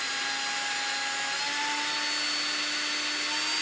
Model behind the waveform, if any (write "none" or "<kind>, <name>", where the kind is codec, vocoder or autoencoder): none